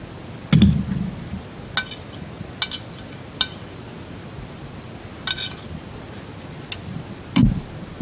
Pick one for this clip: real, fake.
real